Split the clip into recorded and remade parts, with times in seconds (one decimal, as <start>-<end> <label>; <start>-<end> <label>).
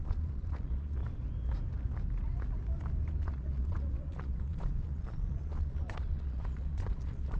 0.0-1.0 remade; 1.0-3.2 recorded; 3.2-7.4 remade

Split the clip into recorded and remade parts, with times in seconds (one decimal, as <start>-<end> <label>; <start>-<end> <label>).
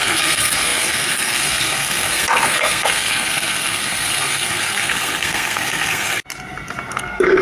0.0-6.2 remade; 6.2-6.9 recorded; 6.9-7.4 remade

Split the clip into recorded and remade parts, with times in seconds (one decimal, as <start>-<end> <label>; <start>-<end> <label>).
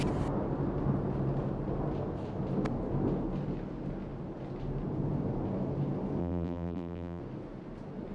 0.0-6.2 recorded; 6.2-7.2 remade; 7.2-8.1 recorded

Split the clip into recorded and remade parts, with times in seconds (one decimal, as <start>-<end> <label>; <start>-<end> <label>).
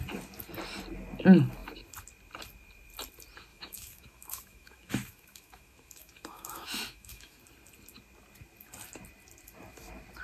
0.0-3.5 recorded; 3.5-7.4 remade; 7.4-10.2 recorded